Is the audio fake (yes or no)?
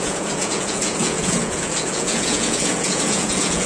yes